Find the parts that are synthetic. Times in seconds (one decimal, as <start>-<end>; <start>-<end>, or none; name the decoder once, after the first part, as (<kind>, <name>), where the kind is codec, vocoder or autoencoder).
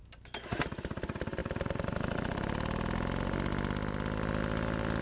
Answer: none